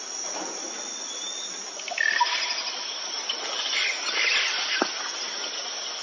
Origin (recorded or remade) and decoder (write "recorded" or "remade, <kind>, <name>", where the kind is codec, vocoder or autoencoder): recorded